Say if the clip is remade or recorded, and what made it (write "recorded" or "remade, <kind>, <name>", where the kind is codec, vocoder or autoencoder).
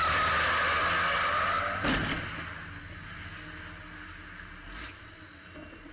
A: recorded